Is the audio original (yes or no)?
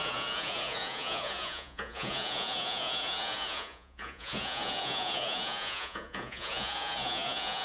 no